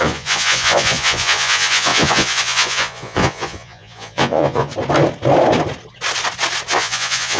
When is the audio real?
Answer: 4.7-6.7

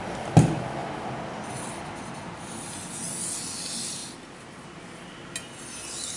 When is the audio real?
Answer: 0.0-6.2